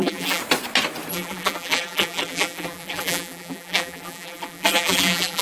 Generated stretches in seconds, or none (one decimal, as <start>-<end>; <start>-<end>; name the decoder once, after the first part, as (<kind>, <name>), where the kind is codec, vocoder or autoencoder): 0.0-0.4 (vocoder, BigVGAN v2); 1.1-5.4